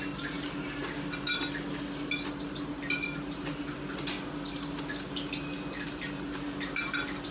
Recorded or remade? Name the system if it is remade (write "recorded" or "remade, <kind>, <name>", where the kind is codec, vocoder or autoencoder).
recorded